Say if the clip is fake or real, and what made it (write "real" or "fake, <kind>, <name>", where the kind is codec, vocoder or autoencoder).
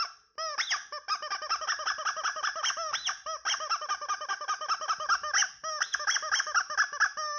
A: real